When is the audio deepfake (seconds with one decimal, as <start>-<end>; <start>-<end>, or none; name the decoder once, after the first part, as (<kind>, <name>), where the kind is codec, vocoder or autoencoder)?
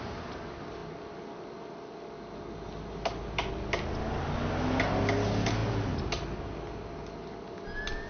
none